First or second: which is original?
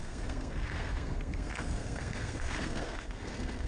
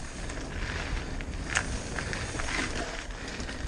second